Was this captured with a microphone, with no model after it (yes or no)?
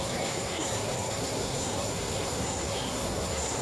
no